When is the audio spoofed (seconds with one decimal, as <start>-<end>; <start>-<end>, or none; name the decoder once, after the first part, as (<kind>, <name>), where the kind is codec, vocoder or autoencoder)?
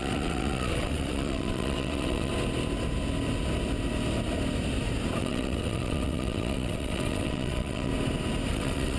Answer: 0.0-2.3 (vocoder, WaveNeXt); 5.2-7.9; 8.5-9.0